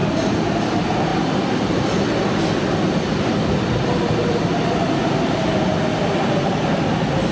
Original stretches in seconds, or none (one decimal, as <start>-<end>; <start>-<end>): 0.0-7.3